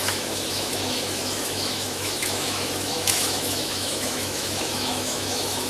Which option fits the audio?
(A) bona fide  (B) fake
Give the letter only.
B